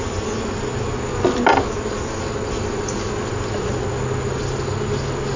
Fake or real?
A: real